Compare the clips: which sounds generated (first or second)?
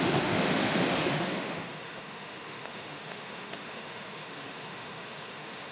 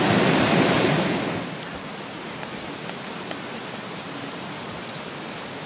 first